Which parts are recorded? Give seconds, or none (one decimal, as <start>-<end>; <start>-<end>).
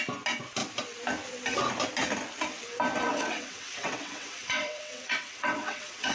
0.0-3.1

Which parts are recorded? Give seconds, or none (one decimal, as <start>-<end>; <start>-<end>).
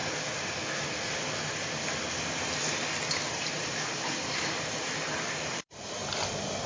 0.0-3.3; 6.0-6.7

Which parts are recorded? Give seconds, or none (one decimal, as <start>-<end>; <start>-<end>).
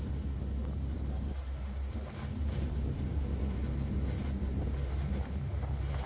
0.0-0.6; 1.3-6.1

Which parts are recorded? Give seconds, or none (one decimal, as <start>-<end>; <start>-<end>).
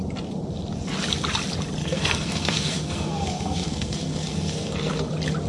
0.0-1.8; 5.1-5.5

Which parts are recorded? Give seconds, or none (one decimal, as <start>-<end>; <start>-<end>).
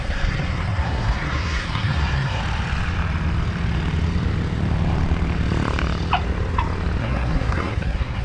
2.4-7.0